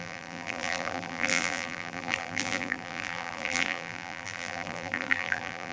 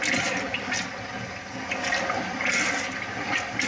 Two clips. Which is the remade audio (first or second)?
first